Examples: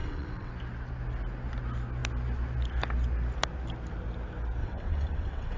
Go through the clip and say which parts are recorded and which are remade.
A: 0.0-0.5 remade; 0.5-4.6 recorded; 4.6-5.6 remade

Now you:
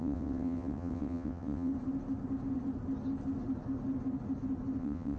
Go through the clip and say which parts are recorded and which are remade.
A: 0.0-1.7 remade; 1.7-4.8 recorded; 4.8-5.2 remade